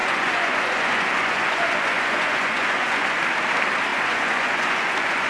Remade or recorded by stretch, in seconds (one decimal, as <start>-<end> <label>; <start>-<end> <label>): 0.0-3.2 remade; 3.2-3.9 recorded; 3.9-5.3 remade